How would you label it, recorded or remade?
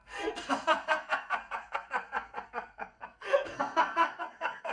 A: remade